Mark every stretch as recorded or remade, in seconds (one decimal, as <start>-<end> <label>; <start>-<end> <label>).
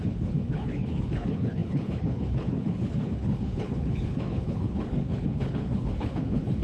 0.0-6.6 remade